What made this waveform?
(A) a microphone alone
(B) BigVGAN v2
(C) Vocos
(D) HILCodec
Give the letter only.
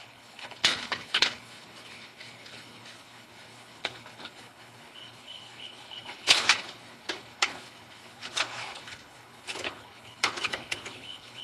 D